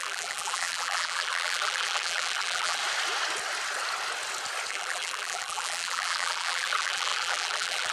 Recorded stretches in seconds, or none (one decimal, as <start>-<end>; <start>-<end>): 2.8-4.7